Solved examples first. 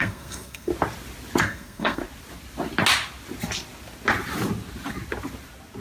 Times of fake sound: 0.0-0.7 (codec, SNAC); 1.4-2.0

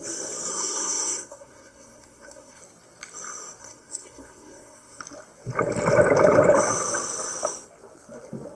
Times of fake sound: 0.5-2.6 (codec, SNAC); 3.6-5.0

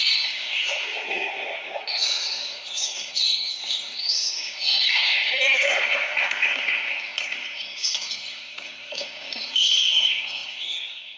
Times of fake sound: 0.0-11.2 (codec, SNAC)

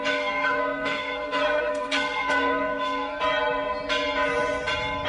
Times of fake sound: 0.0-3.1 (codec, SNAC)

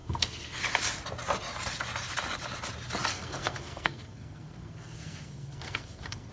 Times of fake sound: 0.0-0.6 (codec, SNAC); 3.1-6.3

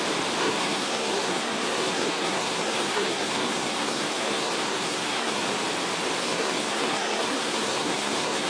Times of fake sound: 0.4-5.4 (codec, SNAC); 6.2-8.5